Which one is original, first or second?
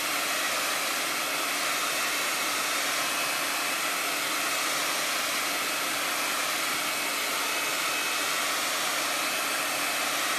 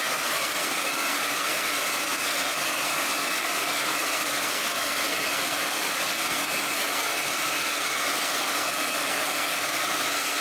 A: first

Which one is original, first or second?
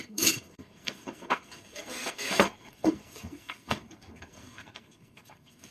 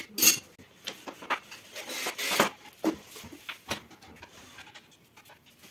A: second